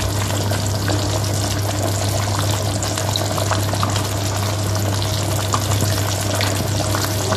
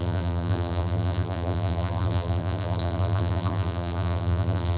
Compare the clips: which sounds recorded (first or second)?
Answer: first